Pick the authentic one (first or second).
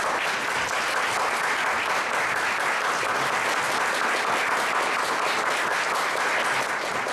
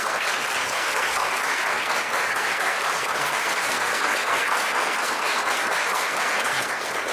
first